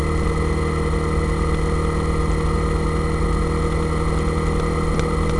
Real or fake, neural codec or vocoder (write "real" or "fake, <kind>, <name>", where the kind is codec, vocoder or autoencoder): real